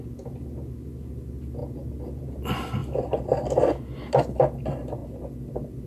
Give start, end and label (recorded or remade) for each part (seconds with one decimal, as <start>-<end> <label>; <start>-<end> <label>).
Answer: 0.0-5.9 recorded